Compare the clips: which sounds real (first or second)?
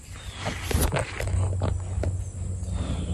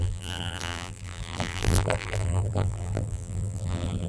first